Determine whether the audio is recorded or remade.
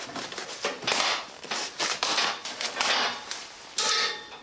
recorded